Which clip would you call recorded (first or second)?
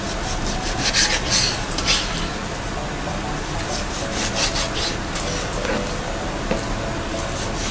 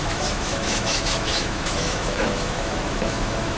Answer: first